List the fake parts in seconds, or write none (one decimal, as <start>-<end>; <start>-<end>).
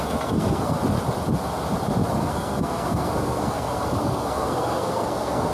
0.0-0.8; 2.1-5.5